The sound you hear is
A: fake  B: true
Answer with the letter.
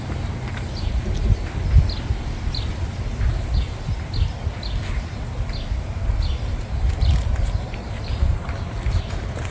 B